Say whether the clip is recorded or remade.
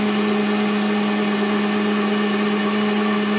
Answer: recorded